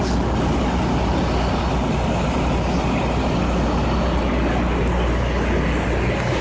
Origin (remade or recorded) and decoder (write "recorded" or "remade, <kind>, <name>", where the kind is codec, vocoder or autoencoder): recorded